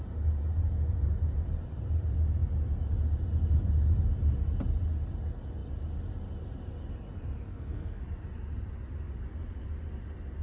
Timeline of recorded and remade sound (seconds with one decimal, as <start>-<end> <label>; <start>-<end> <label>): 0.0-7.5 recorded; 7.5-8.0 remade; 8.0-10.4 recorded